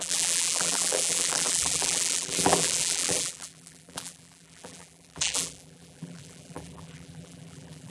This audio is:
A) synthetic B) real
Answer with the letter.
A